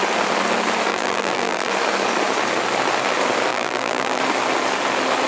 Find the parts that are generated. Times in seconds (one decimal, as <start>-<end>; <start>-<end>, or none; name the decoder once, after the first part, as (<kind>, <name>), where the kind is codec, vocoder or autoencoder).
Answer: 0.9-1.7 (vocoder, BigVGAN v2); 3.5-4.2

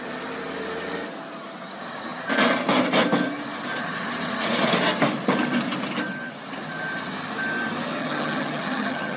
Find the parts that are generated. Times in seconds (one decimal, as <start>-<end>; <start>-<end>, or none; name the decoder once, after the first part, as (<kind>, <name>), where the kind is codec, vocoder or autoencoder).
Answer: 8.0-9.2 (vocoder, HiFi-GAN)

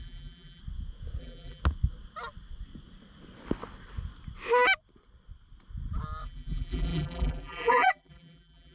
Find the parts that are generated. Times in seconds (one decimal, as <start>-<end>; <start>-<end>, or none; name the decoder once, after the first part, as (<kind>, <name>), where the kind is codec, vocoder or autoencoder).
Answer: 0.0-0.6 (vocoder, BigVGAN v2); 1.2-1.6; 6.2-8.7